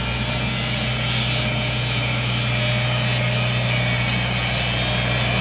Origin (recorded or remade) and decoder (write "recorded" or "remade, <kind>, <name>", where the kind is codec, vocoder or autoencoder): recorded